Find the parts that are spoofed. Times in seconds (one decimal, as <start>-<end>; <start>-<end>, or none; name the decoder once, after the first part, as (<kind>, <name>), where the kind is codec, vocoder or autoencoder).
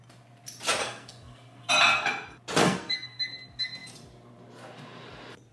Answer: 0.8-1.7 (codec, SNAC); 2.6-3.2